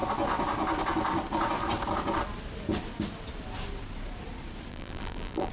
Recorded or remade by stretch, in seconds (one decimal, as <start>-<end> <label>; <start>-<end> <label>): 0.0-4.7 recorded; 4.7-5.5 remade